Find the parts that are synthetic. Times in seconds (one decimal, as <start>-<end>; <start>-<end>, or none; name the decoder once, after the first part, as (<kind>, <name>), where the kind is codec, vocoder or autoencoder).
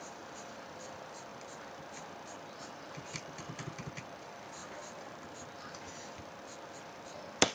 0.0-4.6 (vocoder, BigVGAN v2); 6.8-7.5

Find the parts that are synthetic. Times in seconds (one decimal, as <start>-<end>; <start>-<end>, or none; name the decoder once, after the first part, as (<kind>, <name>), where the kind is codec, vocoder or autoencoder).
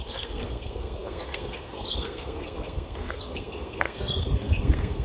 0.0-5.0 (codec, SNAC)